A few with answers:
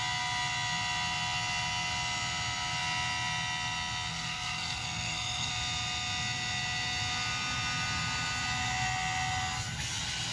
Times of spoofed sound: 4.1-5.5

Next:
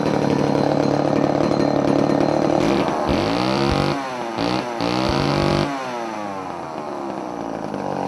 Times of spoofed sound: none

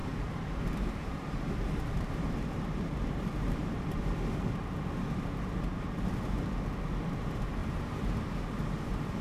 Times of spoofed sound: 0.0-4.0